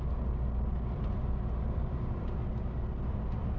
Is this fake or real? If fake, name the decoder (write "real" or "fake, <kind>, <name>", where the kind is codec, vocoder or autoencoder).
real